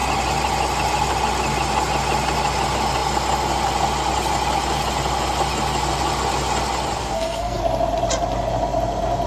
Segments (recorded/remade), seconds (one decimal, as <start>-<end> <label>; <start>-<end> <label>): 0.0-7.0 recorded; 7.0-7.6 remade; 7.6-9.3 recorded